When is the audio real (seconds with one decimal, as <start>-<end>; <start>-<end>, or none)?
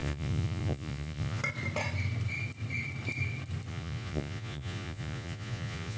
1.4-3.7